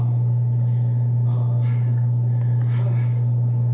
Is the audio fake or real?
real